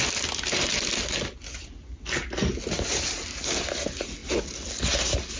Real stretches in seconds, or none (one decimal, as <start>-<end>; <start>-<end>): 0.0-5.4